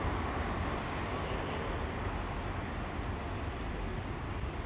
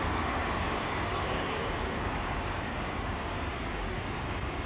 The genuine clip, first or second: first